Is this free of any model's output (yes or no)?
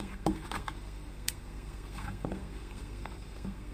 no